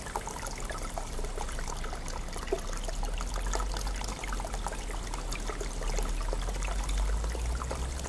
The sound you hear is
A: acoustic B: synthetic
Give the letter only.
A